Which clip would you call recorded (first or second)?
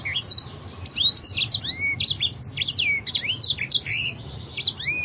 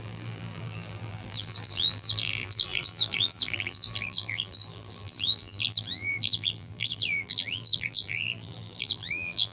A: first